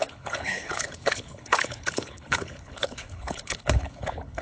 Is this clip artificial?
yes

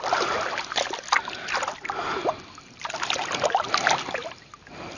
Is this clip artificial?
no